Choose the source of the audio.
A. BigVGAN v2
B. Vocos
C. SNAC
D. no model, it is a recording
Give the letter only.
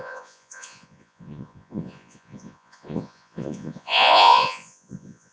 B